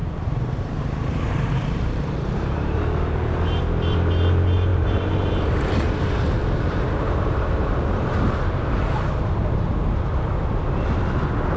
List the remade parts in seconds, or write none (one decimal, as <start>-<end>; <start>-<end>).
0.0-3.6; 4.7-10.0